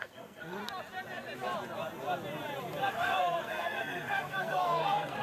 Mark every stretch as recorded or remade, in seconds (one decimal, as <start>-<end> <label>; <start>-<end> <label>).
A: 0.0-0.6 remade; 0.6-2.9 recorded; 2.9-5.2 remade

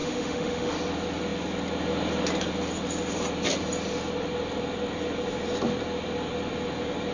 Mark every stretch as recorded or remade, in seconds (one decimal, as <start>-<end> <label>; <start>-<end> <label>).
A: 0.0-0.7 remade; 0.7-7.1 recorded

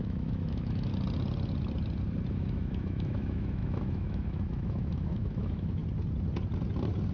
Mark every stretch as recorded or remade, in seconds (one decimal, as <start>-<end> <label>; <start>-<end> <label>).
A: 0.0-0.9 remade; 0.9-2.3 recorded; 2.3-5.8 remade; 5.8-7.1 recorded

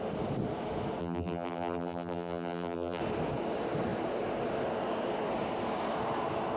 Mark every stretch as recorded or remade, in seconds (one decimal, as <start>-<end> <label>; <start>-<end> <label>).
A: 0.0-1.0 recorded; 1.0-3.0 remade; 3.0-6.6 recorded

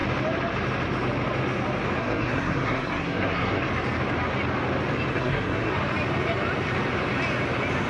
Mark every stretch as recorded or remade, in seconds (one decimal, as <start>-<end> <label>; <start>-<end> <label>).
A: 0.0-2.0 recorded; 2.0-3.7 remade; 3.7-5.1 recorded; 5.1-5.7 remade; 5.7-7.9 recorded